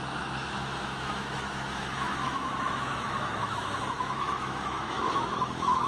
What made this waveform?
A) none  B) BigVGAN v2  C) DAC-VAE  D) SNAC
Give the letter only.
C